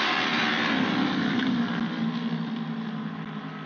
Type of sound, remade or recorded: recorded